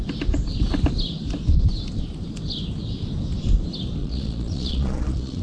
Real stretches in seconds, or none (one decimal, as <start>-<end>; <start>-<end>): 0.0-4.0